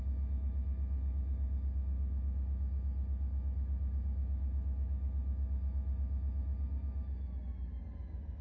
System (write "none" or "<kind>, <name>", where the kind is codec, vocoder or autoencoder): none